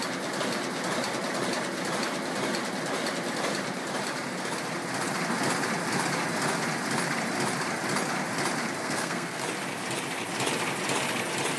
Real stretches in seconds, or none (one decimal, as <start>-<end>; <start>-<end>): 0.0-8.8; 9.4-11.6